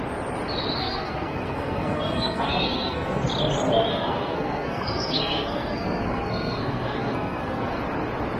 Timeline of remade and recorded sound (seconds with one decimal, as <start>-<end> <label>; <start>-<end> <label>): 0.0-0.8 recorded; 0.8-3.3 remade; 3.3-3.9 recorded; 3.9-7.8 remade; 7.8-8.4 recorded